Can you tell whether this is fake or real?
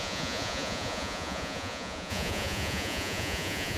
fake